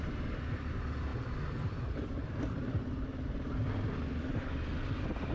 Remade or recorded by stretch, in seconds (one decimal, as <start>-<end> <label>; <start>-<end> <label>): 0.0-5.3 recorded